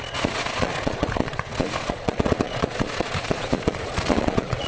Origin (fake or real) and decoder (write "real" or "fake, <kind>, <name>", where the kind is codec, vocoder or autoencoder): fake, vocoder, Vocos